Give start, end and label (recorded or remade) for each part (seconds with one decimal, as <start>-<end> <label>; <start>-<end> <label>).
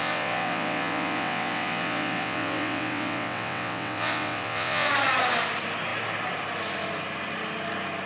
0.0-4.9 remade; 4.9-8.1 recorded